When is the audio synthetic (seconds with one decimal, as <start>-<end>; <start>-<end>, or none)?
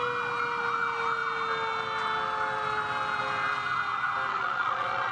4.3-5.1